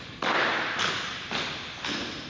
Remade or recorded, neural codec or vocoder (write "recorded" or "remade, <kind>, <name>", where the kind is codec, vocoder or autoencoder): recorded